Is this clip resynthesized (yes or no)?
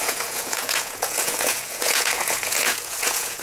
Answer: yes